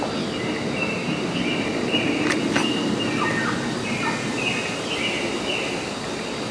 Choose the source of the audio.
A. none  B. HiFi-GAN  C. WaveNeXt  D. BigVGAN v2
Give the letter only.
A